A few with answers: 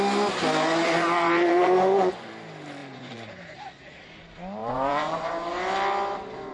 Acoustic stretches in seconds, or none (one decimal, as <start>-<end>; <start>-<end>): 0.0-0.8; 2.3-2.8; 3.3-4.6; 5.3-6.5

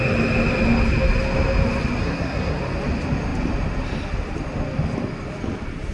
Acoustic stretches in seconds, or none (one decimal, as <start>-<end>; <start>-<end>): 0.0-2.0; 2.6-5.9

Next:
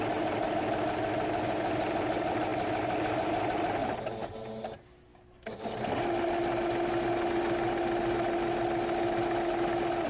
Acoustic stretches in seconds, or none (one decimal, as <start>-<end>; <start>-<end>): 0.0-10.1

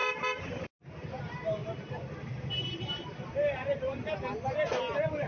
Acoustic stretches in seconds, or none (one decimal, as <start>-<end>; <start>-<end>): 1.2-1.6; 4.1-5.3

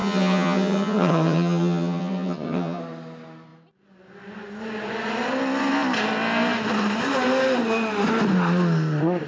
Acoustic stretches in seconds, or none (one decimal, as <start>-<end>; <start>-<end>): 2.8-9.3

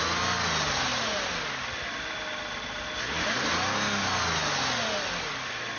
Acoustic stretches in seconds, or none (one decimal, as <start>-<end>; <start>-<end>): 0.0-0.9; 1.4-5.8

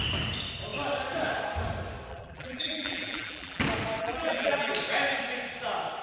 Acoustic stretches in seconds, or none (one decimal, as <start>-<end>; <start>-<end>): 0.0-2.1; 3.6-4.0; 4.7-6.0